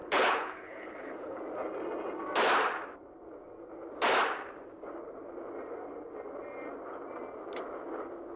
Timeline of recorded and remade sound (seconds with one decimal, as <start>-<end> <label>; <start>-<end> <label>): 0.0-1.4 remade; 1.4-8.4 recorded